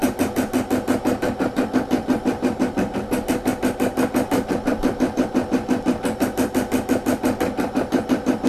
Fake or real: real